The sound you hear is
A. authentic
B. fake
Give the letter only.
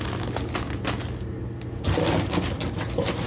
A